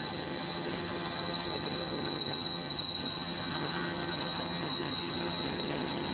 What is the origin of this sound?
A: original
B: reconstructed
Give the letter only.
B